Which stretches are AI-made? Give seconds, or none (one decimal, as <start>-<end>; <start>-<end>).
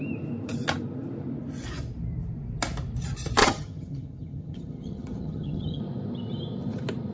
3.4-5.8